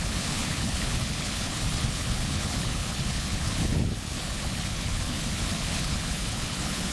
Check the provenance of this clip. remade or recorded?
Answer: remade